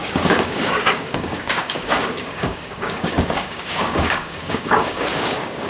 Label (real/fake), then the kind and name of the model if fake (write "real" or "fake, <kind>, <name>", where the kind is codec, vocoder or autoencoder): fake, codec, DAC